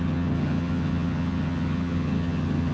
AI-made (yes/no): yes